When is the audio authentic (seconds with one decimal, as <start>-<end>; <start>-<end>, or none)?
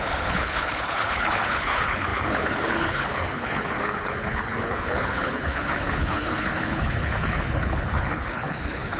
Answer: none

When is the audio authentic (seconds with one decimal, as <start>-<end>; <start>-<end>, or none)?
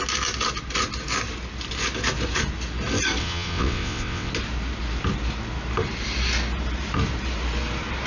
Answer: 0.0-3.2; 4.3-8.1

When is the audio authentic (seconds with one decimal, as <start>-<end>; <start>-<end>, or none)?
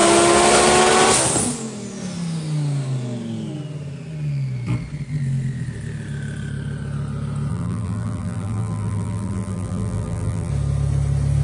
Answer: 0.0-7.5; 10.5-11.4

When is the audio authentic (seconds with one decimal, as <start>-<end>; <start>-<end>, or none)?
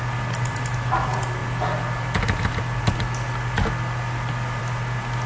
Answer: 0.0-5.3